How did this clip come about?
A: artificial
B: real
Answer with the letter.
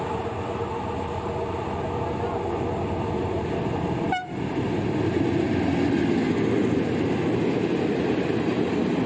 B